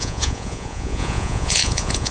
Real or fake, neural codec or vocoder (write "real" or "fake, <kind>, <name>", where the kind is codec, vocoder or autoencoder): fake, vocoder, Vocos